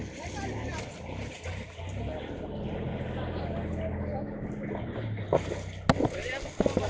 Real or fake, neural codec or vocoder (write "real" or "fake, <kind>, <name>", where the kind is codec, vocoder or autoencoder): real